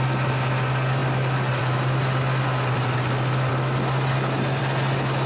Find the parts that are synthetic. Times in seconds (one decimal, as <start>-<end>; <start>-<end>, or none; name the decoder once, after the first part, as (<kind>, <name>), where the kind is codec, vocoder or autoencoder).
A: none